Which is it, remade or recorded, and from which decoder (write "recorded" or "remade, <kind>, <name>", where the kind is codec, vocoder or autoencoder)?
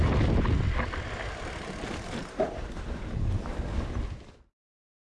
recorded